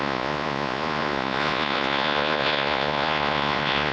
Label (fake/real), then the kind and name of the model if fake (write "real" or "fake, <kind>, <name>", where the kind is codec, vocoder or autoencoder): fake, vocoder, Vocos